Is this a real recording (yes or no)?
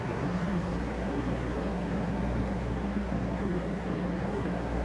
no